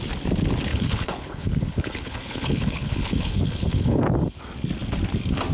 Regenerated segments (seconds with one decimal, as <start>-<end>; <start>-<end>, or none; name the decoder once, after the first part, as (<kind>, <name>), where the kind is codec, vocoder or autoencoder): 0.7-4.0 (codec, HILCodec)